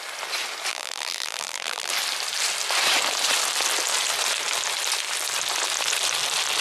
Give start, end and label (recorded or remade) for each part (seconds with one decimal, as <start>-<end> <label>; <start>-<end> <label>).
0.0-0.7 recorded; 0.7-1.9 remade; 1.9-6.6 recorded